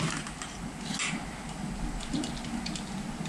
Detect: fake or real real